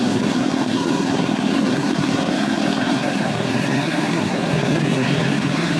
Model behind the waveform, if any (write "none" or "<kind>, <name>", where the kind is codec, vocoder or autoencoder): codec, SNAC